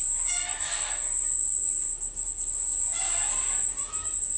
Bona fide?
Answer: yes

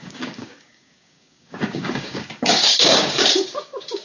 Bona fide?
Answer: no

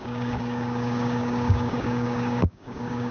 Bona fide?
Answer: no